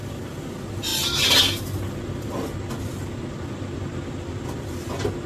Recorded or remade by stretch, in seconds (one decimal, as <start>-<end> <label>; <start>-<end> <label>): 0.0-5.3 recorded